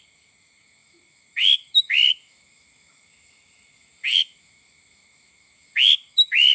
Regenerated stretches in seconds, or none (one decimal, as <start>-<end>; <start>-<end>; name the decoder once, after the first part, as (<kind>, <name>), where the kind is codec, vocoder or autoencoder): 0.0-6.5 (autoencoder, DAC-VAE)